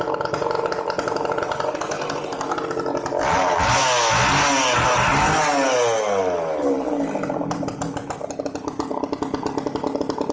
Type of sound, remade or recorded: recorded